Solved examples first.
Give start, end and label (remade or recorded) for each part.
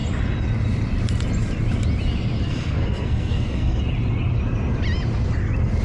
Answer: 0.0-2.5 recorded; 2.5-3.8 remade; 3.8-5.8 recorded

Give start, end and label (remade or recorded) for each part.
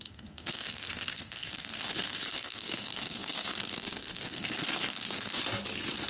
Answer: 0.0-5.4 remade; 5.4-6.1 recorded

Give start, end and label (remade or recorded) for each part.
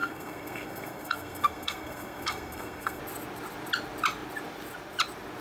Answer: 0.0-3.0 remade; 3.0-5.4 recorded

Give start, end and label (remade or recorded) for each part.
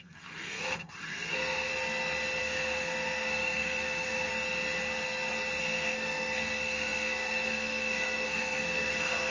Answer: 0.0-1.7 remade; 1.7-2.4 recorded; 2.4-4.3 remade; 4.3-5.6 recorded; 5.6-9.3 remade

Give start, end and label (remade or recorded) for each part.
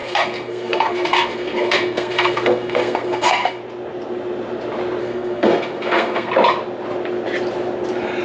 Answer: 0.0-3.6 remade; 3.6-5.0 recorded; 5.0-6.3 remade; 6.3-8.2 recorded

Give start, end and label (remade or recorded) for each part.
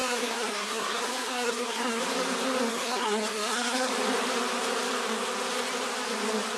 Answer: 0.0-2.0 remade; 2.0-2.7 recorded; 2.7-3.9 remade; 3.9-6.6 recorded